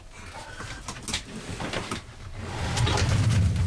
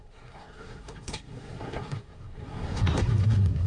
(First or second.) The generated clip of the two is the second